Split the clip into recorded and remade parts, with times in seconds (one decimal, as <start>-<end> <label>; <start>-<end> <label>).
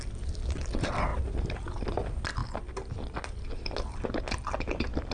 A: 0.0-5.1 recorded